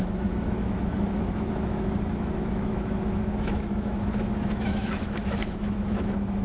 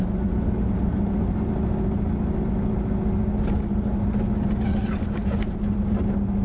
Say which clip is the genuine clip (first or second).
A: second